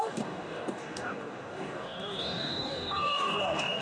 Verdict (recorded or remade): remade